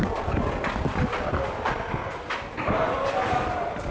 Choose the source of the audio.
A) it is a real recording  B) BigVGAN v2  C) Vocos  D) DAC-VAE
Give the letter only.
A